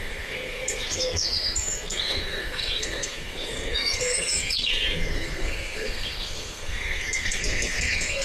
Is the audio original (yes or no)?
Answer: no